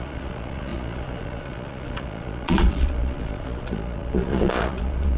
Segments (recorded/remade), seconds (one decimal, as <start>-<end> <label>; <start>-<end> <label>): 0.0-5.2 remade